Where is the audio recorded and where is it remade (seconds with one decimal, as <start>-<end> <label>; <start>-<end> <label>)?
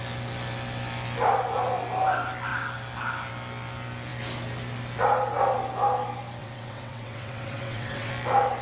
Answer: 0.0-6.4 recorded; 6.4-8.1 remade; 8.1-8.6 recorded